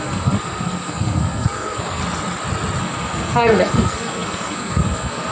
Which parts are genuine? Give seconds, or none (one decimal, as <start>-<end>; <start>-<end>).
2.0-2.8